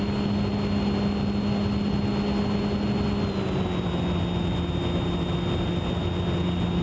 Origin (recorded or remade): recorded